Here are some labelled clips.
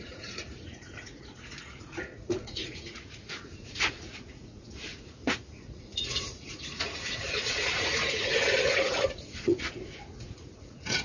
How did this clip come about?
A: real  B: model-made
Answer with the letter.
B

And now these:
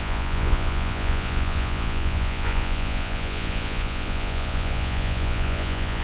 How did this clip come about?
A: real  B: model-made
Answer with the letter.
B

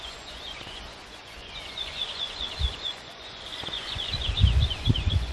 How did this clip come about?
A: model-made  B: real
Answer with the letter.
A